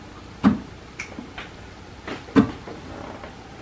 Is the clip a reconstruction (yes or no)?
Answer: no